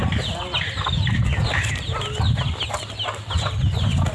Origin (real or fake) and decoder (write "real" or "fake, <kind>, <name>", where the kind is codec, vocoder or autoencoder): real